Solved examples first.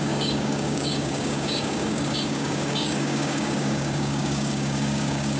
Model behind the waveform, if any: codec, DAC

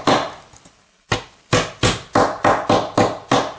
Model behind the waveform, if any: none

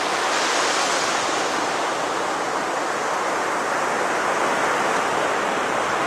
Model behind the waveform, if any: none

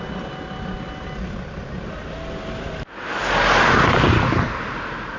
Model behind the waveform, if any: none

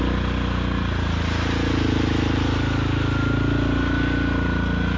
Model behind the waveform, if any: none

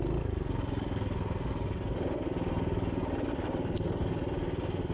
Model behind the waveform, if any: none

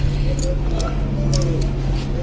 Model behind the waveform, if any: none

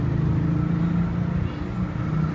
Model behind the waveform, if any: none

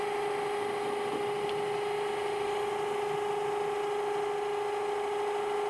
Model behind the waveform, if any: none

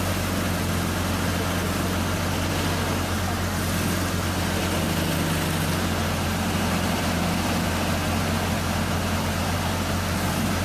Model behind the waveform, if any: none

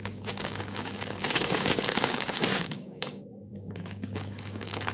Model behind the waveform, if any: codec, DAC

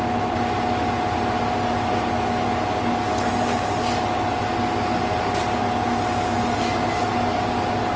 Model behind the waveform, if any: none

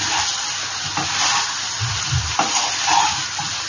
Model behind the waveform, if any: none